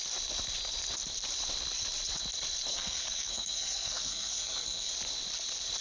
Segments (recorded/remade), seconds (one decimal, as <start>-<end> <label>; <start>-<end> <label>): 0.0-2.7 recorded; 2.7-4.9 remade; 4.9-5.8 recorded